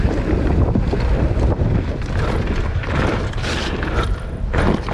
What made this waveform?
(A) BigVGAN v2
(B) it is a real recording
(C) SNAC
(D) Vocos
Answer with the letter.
B